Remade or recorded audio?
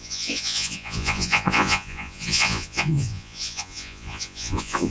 remade